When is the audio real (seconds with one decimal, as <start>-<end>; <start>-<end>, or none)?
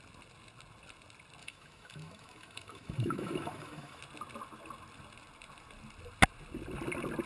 0.0-1.4; 4.0-7.3